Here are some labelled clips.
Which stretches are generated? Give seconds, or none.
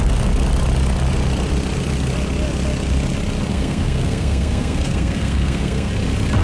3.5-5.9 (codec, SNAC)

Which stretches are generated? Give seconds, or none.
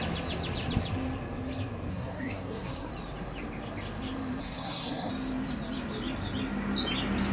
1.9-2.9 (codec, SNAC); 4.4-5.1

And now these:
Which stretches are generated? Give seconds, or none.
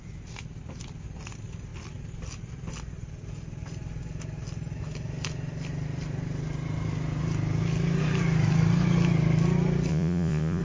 9.9-10.6 (vocoder, Vocos)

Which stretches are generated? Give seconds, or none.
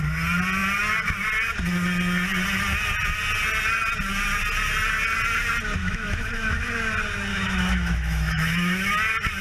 5.8-6.7 (autoencoder, DAC-VAE); 7.3-8.9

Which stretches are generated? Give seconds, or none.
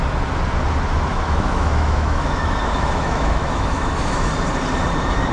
1.1-4.3 (autoencoder, DAC-VAE)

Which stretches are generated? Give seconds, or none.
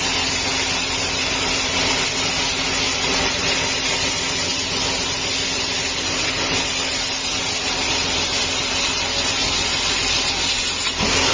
none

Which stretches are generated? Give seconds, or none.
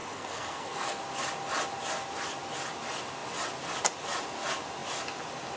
0.0-1.0 (codec, SNAC)